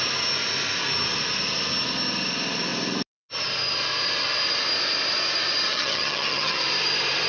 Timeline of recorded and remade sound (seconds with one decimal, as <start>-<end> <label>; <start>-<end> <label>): 0.0-5.7 recorded; 5.7-6.6 remade; 6.6-7.3 recorded

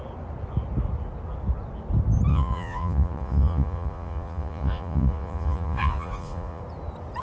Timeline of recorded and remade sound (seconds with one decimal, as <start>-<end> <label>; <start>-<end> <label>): 0.0-2.3 recorded; 2.3-6.6 remade; 6.6-7.2 recorded

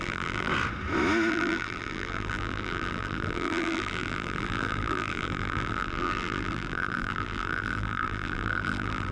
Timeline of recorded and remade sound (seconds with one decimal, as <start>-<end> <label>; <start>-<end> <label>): 0.0-0.5 remade; 0.5-1.3 recorded; 1.3-9.1 remade

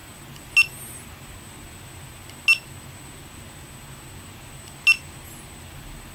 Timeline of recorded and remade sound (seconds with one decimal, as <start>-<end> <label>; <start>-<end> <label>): 0.0-6.1 recorded

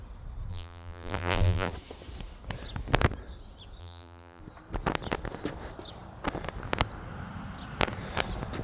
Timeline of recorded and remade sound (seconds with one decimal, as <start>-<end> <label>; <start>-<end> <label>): 0.0-0.5 recorded; 0.5-1.7 remade; 1.7-3.8 recorded; 3.8-4.4 remade; 4.4-8.6 recorded